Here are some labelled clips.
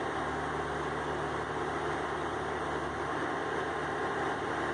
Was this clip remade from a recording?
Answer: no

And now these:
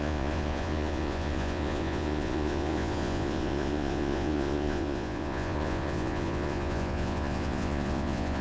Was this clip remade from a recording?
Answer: yes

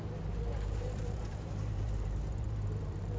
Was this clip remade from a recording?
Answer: yes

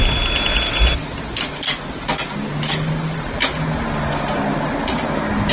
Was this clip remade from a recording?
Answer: no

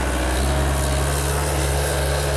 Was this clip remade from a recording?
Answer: no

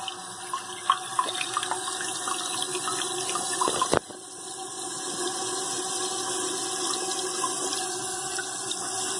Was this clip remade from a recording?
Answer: no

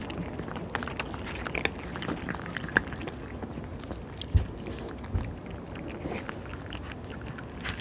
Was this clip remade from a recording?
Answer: no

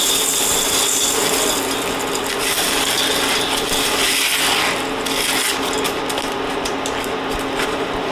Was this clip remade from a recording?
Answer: no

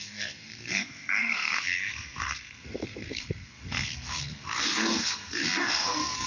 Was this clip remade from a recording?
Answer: yes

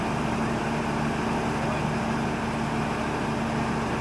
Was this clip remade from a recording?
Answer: no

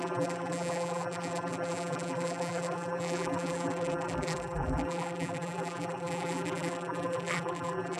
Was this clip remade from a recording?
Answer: yes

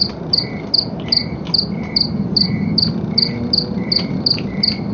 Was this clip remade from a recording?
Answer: no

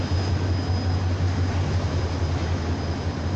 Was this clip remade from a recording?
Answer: no